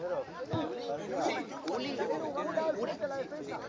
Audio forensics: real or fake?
real